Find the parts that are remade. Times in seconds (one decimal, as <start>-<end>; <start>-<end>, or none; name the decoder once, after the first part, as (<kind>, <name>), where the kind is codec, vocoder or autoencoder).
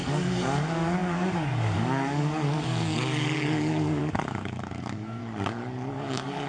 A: 0.0-5.2 (codec, DAC); 5.9-6.5